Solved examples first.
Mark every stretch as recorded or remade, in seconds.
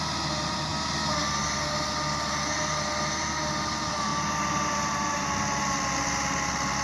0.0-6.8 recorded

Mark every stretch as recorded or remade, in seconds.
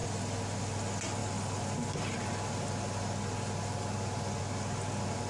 0.0-0.6 remade; 0.6-5.3 recorded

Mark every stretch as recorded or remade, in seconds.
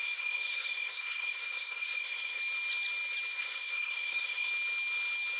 0.0-2.4 remade; 2.4-3.3 recorded; 3.3-4.5 remade; 4.5-5.4 recorded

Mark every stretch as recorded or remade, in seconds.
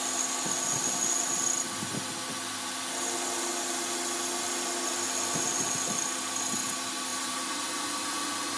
0.0-7.1 recorded; 7.1-7.8 remade; 7.8-8.6 recorded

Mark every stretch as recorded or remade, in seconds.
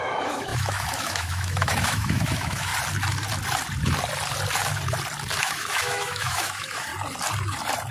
0.0-2.7 remade; 2.7-5.4 recorded; 5.4-6.9 remade; 6.9-7.9 recorded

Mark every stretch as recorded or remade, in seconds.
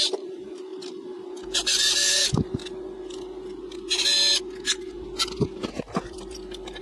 0.0-0.7 remade; 0.7-2.2 recorded; 2.2-2.6 remade; 2.6-6.8 recorded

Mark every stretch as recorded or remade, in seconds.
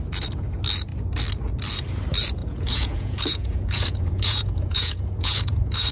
0.0-2.4 recorded; 2.4-5.9 remade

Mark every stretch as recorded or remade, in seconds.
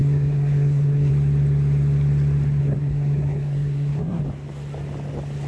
0.0-1.1 remade; 1.1-2.6 recorded; 2.6-4.2 remade; 4.2-5.5 recorded